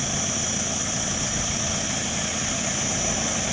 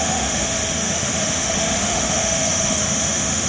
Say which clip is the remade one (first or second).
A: second